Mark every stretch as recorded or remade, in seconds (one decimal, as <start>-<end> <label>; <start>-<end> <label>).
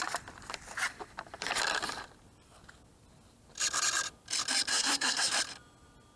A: 0.0-4.7 recorded; 4.7-5.3 remade; 5.3-6.2 recorded